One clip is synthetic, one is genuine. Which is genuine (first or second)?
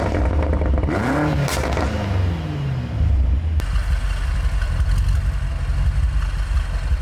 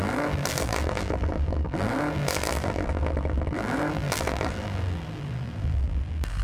first